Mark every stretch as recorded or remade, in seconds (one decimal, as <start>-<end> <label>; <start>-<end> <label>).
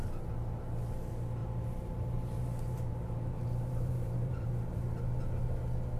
0.0-1.4 recorded; 1.4-5.0 remade; 5.0-6.0 recorded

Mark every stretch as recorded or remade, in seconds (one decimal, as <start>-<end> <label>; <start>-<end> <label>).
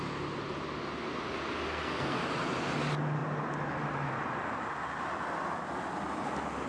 0.0-1.7 recorded; 1.7-2.2 remade; 2.2-6.7 recorded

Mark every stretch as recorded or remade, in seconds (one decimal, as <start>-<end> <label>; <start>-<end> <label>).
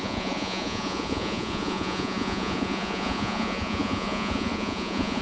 0.0-5.2 remade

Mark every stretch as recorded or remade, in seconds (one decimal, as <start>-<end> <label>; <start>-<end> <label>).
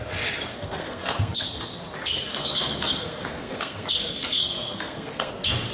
0.0-0.5 recorded; 0.5-1.8 remade; 1.8-2.3 recorded; 2.3-5.3 remade; 5.3-5.7 recorded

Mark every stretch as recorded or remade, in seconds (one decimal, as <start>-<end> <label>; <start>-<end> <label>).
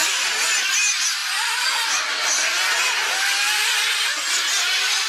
0.0-5.1 recorded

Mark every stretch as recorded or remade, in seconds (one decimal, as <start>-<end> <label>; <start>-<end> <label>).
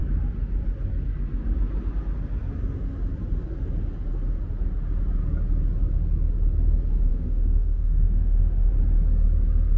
0.0-7.1 recorded; 7.1-8.7 remade; 8.7-9.8 recorded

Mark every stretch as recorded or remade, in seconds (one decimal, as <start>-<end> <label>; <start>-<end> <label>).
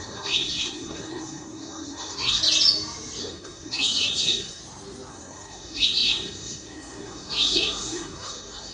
0.0-2.4 remade; 2.4-3.2 recorded; 3.2-4.6 remade; 4.6-5.1 recorded; 5.1-8.7 remade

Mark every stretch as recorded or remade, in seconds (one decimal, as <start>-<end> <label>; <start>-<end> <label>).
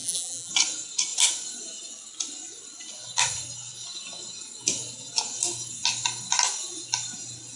0.0-0.5 remade; 0.5-7.6 recorded